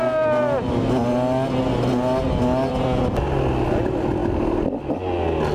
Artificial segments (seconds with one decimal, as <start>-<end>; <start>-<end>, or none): none